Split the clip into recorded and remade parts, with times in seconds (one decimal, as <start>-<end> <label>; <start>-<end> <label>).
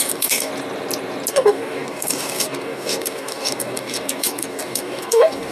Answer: 0.0-0.5 remade; 0.5-1.3 recorded; 1.3-5.5 remade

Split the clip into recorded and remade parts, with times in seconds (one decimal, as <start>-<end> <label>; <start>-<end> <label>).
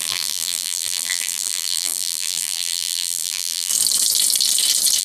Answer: 0.0-3.7 remade; 3.7-5.0 recorded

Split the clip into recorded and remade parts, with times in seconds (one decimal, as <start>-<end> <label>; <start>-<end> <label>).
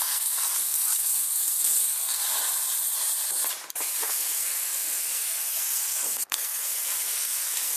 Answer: 0.0-2.2 remade; 2.2-4.0 recorded; 4.0-7.8 remade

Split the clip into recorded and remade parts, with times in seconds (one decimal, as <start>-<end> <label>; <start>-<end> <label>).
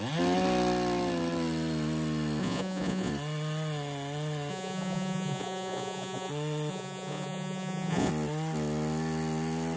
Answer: 0.0-2.4 recorded; 2.4-3.1 remade; 3.1-4.5 recorded; 4.5-6.3 remade; 6.3-6.7 recorded; 6.7-8.1 remade; 8.1-9.8 recorded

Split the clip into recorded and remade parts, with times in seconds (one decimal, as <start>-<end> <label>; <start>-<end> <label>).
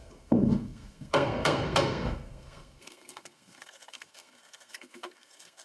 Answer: 0.0-5.6 remade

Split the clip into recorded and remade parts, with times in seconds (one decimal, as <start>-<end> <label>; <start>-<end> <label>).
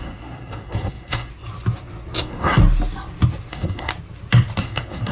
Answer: 0.0-1.3 remade; 1.3-2.2 recorded; 2.2-2.6 remade; 2.6-3.5 recorded; 3.5-3.9 remade; 3.9-4.6 recorded; 4.6-5.1 remade